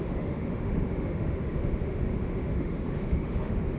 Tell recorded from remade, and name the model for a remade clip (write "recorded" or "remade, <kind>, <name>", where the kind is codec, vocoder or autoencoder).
remade, autoencoder, DAC-VAE